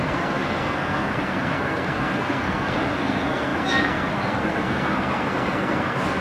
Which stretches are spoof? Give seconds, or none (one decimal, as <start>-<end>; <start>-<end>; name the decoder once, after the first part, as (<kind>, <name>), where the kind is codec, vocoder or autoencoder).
0.0-6.2 (codec, SNAC)